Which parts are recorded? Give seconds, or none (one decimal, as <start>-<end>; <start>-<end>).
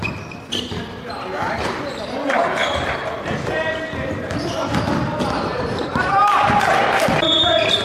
0.0-2.6; 3.7-5.5; 6.5-7.8